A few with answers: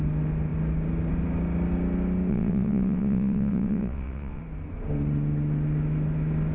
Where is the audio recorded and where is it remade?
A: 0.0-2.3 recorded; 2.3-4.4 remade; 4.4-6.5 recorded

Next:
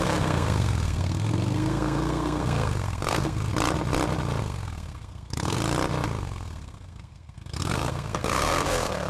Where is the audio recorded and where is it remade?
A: 0.0-3.5 remade; 3.5-4.4 recorded; 4.4-5.6 remade; 5.6-6.2 recorded; 6.2-9.1 remade

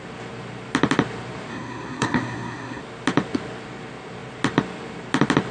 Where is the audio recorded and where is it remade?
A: 0.0-1.5 recorded; 1.5-2.8 remade; 2.8-5.5 recorded

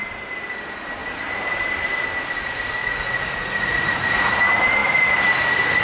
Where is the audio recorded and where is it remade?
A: 0.0-2.8 recorded; 2.8-4.3 remade; 4.3-5.8 recorded